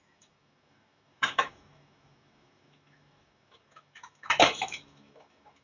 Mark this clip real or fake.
fake